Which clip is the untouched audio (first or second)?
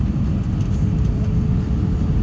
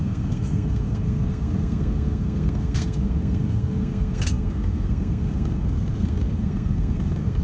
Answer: first